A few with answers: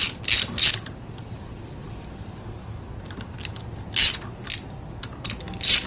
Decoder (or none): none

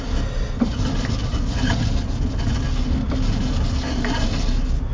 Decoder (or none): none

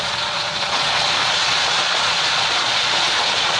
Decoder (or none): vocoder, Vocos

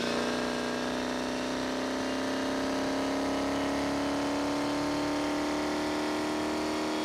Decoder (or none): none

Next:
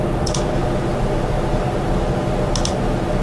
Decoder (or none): none